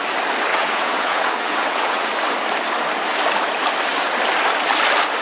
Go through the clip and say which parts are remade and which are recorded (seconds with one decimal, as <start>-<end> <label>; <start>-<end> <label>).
0.0-0.5 recorded; 0.5-2.1 remade; 2.1-5.2 recorded